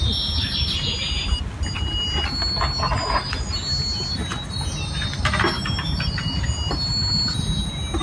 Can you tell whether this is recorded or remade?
recorded